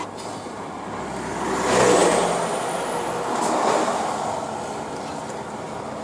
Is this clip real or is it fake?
real